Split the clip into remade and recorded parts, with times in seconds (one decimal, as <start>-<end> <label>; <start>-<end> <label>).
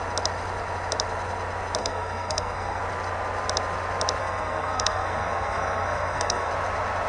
0.0-1.8 recorded; 1.8-2.8 remade; 2.8-4.2 recorded; 4.2-6.5 remade; 6.5-7.1 recorded